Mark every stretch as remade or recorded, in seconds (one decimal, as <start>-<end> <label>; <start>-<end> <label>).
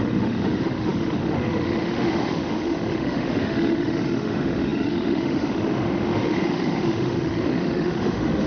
0.0-8.5 remade